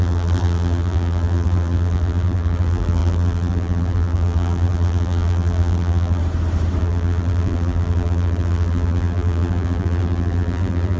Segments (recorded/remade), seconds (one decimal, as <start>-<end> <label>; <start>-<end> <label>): 0.0-6.2 remade; 6.2-6.8 recorded; 6.8-11.0 remade